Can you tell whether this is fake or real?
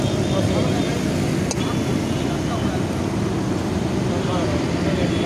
real